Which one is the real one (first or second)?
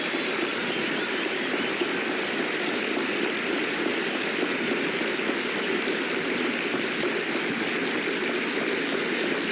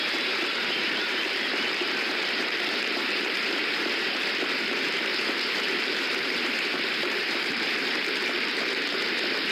first